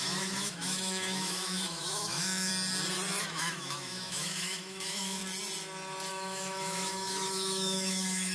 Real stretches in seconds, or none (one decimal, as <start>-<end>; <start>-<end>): 2.5-3.2; 5.2-6.1